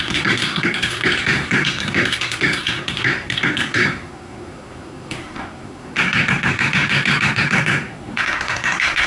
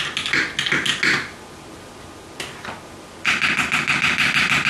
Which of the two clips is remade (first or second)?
first